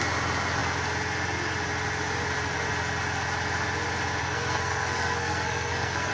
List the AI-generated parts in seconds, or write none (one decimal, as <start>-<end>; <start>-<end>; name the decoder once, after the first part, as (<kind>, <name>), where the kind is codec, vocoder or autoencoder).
4.2-6.1 (codec, SNAC)